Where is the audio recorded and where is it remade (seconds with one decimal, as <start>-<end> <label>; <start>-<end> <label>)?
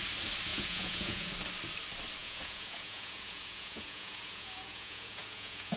0.0-0.5 recorded; 0.5-1.3 remade; 1.3-2.2 recorded; 2.2-5.8 remade